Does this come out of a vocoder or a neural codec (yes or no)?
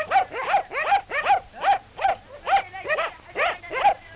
no